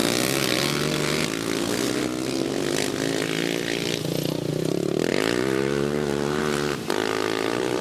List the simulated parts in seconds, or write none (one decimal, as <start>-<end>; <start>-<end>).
5.1-6.4